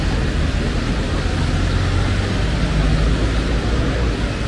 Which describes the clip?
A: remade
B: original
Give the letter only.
B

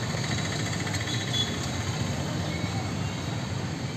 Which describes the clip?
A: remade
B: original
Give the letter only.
B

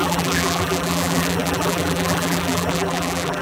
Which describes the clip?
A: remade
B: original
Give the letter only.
A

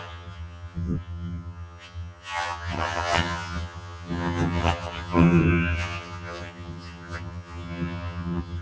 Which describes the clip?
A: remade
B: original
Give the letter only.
A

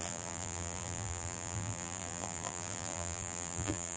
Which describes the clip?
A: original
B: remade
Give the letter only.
B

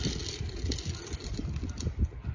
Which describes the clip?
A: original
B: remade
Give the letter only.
A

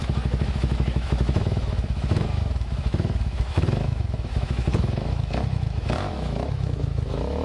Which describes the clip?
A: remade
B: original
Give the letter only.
A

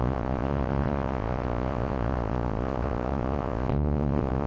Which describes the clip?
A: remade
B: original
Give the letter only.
A